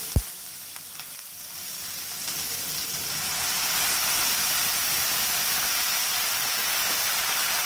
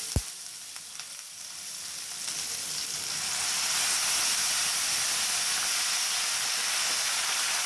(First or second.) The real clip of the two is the second